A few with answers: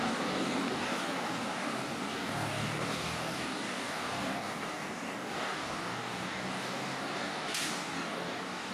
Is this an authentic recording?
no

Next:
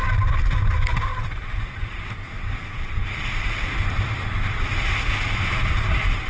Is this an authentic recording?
yes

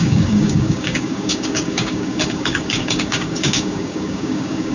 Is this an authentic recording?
no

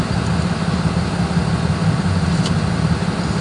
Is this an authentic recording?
yes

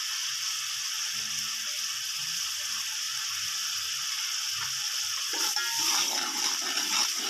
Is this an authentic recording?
yes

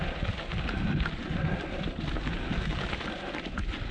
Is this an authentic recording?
yes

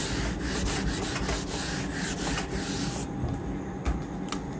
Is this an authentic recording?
yes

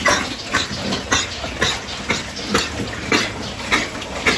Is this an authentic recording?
yes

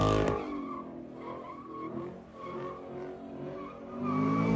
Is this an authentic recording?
yes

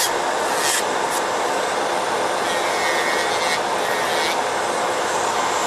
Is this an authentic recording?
yes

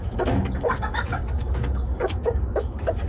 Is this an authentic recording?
no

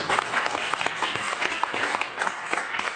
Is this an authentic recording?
no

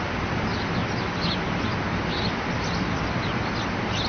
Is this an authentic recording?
yes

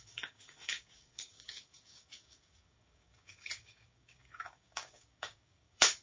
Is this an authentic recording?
no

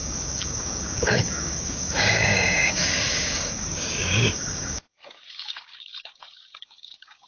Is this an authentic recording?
no